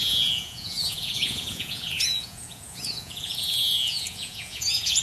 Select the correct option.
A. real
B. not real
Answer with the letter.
B